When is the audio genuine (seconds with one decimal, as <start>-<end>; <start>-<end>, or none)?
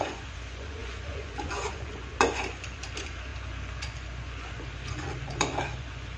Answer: none